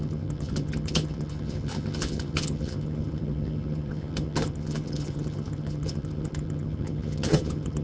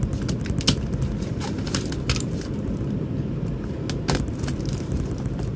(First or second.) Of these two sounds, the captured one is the second